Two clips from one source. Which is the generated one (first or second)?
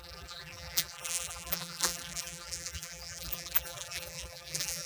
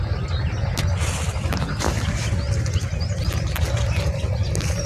first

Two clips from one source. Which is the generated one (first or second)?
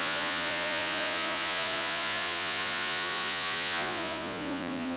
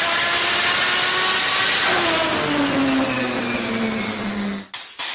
first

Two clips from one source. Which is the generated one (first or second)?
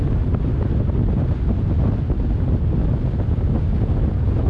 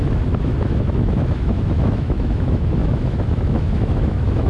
second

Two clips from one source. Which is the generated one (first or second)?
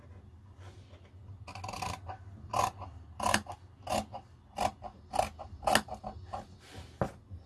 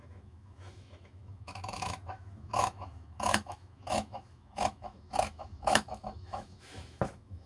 second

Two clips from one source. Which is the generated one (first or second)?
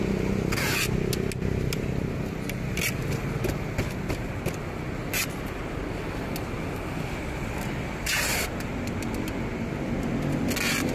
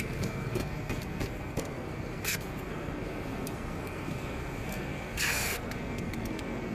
second